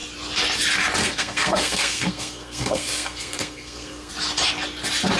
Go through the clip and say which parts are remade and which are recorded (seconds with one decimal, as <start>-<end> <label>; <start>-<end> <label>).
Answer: 0.0-1.0 recorded; 1.0-4.1 remade; 4.1-5.2 recorded